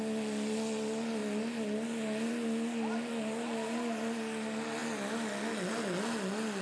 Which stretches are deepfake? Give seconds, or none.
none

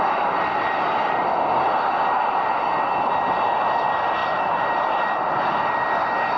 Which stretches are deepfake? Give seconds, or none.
4.2-4.7 (vocoder, BigVGAN v2)

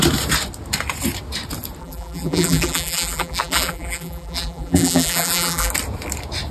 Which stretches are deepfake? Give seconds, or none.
1.8-5.7 (vocoder, BigVGAN v2)

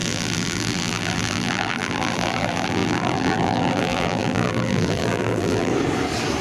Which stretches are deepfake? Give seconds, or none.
0.0-5.7 (vocoder, BigVGAN v2)

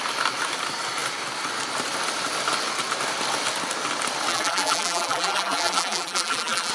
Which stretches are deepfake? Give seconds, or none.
4.3-6.7 (vocoder, BigVGAN v2)

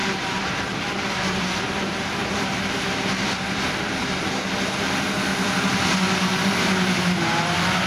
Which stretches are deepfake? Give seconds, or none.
0.0-4.2 (vocoder, BigVGAN v2); 5.3-7.0

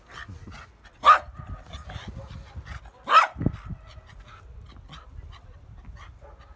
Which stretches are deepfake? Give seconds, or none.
none

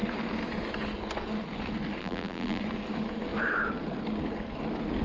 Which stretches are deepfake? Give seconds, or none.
2.0-2.6 (vocoder, BigVGAN v2)